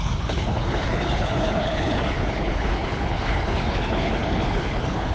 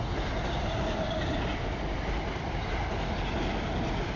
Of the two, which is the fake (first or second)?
first